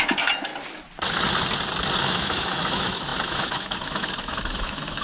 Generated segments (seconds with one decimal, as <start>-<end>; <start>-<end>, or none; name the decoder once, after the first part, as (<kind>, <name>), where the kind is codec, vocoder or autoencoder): 0.0-0.5 (autoencoder, DAC-VAE); 2.0-5.0